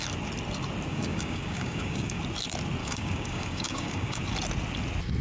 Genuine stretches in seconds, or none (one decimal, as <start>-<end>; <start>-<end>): 0.0-0.9; 2.2-2.8; 4.2-5.2